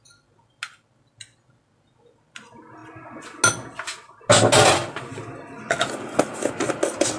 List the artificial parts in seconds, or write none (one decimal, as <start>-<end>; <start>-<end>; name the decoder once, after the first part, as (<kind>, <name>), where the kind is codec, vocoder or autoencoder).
none